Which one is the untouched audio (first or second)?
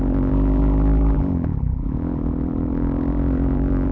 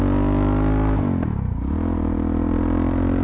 second